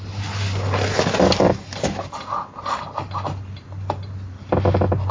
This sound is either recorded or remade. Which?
recorded